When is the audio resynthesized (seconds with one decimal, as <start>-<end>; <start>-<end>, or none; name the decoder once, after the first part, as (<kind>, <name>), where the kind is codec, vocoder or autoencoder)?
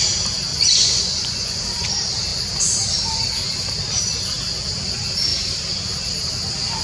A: 0.5-1.6 (vocoder, Vocos)